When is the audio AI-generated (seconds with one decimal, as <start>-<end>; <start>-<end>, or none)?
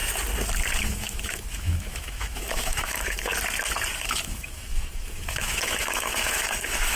0.8-3.3; 4.0-7.0